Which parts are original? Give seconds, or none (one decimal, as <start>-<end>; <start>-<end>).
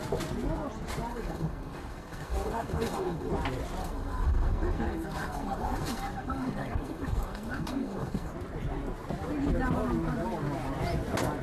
0.0-1.1; 3.3-3.8; 8.3-11.4